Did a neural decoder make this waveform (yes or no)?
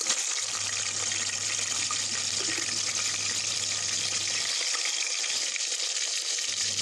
no